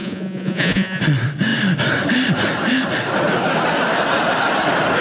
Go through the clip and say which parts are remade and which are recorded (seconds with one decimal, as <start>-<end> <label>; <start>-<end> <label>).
0.0-1.0 remade; 1.0-5.0 recorded